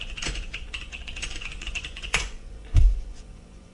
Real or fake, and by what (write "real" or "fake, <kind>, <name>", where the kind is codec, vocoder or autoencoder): fake, vocoder, Vocos